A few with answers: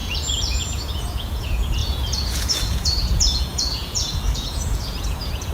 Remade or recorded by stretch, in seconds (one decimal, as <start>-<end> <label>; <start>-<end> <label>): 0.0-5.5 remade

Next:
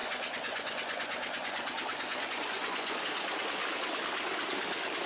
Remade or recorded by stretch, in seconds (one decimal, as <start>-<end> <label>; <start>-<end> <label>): 0.0-3.0 remade; 3.0-5.0 recorded

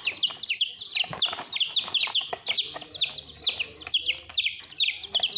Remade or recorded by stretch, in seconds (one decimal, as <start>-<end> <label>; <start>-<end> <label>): 0.0-5.4 recorded